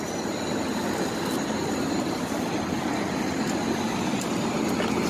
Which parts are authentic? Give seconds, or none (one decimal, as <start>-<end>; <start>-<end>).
0.0-5.1